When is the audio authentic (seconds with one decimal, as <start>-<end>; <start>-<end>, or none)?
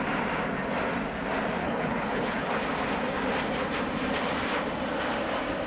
0.0-1.6; 2.5-5.7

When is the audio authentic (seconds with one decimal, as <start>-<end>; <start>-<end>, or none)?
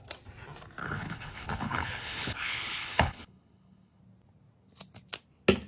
0.0-0.8; 4.0-5.7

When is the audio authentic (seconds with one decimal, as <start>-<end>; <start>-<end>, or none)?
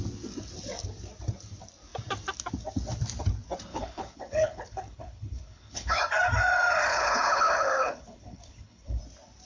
0.0-3.7; 6.0-6.9; 9.0-9.5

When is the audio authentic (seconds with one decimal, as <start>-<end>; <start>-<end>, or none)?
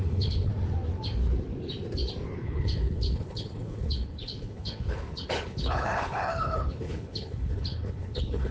0.5-2.4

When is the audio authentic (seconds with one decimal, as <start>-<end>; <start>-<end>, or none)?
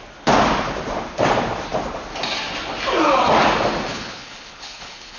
0.0-3.9